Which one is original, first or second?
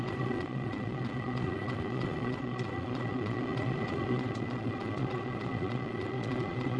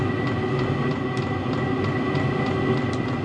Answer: second